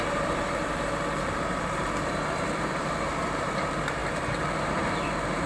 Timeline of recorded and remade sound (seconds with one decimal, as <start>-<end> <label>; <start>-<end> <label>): 0.0-5.5 remade